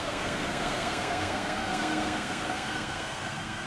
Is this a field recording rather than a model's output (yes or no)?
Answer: no